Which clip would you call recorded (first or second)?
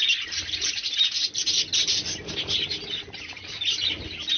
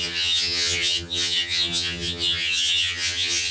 first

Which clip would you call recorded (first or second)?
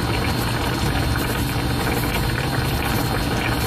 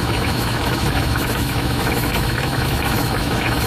first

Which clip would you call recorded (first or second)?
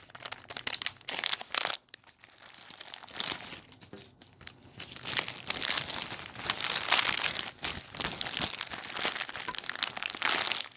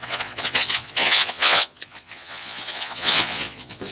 first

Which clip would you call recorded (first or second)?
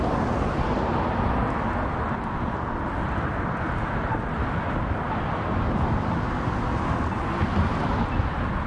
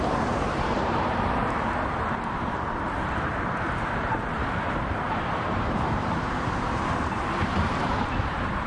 first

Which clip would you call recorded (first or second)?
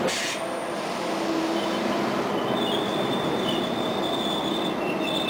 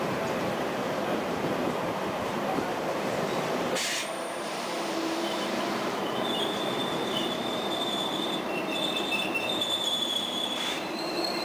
first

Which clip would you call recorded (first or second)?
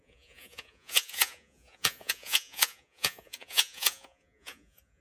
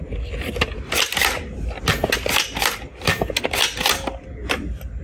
second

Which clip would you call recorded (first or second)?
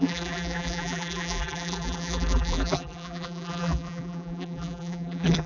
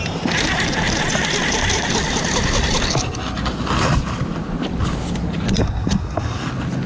second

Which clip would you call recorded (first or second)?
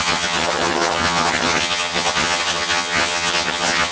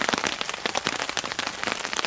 second